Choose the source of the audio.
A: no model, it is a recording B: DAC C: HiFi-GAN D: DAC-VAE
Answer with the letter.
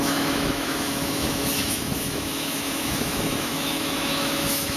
D